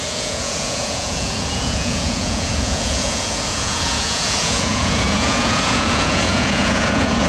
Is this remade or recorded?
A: remade